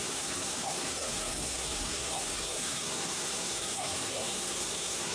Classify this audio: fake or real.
fake